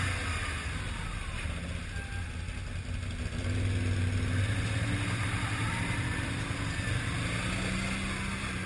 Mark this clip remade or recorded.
recorded